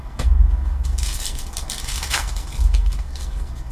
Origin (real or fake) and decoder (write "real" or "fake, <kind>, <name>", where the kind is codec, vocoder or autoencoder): fake, codec, SNAC